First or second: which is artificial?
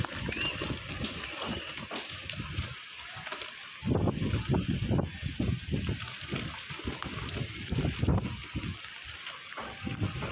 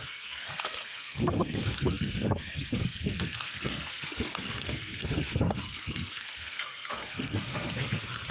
second